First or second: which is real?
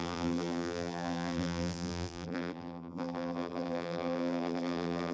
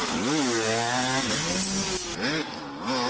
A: second